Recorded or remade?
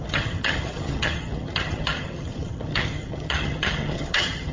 remade